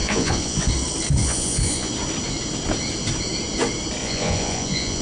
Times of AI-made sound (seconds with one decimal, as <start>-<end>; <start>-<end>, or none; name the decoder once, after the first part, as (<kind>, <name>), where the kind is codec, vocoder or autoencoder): 0.0-0.7 (vocoder, Vocos); 1.2-1.9; 4.0-5.0